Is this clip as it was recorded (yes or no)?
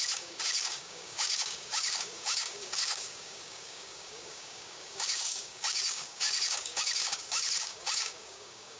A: no